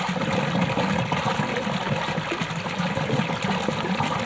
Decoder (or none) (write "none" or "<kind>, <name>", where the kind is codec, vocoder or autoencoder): none